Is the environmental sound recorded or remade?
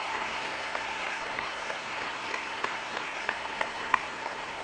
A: remade